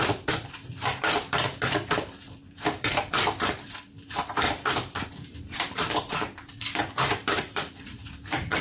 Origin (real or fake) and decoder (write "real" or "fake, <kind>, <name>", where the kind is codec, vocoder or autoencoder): fake, vocoder, BigVGAN v2